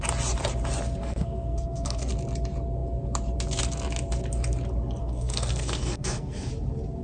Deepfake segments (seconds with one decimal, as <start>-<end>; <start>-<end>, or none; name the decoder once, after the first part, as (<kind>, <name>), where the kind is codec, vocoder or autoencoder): 1.0-2.1 (codec, SNAC); 5.0-6.5